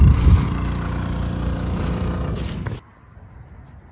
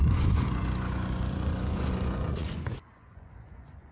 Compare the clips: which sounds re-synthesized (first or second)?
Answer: second